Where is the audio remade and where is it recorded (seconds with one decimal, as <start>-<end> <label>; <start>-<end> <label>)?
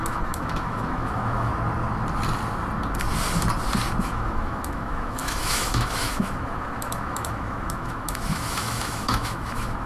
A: 0.0-1.5 remade; 1.5-4.0 recorded; 4.0-9.9 remade